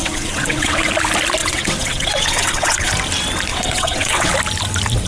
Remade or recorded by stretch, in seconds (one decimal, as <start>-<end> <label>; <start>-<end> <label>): 0.0-0.9 remade; 0.9-1.4 recorded; 1.4-2.9 remade; 2.9-3.5 recorded; 3.5-4.3 remade; 4.3-5.1 recorded